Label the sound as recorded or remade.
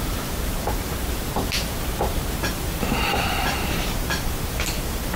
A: remade